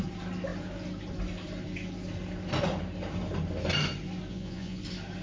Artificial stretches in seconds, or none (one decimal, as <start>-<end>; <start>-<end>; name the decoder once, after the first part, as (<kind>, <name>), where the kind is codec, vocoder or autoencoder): 4.3-4.8 (vocoder, Vocos)